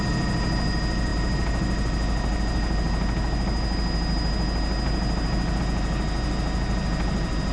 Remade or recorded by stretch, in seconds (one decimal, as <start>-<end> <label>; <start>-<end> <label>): 0.0-7.5 recorded